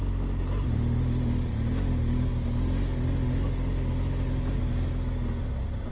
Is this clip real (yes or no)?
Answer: yes